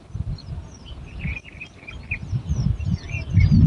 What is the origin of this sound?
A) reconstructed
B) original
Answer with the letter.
B